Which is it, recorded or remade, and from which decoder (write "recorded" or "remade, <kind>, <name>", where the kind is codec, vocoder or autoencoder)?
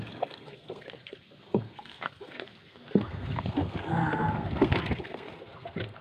remade, codec, SNAC